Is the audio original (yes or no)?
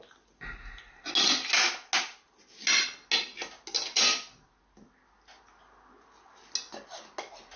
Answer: yes